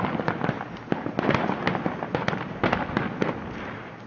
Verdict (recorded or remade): recorded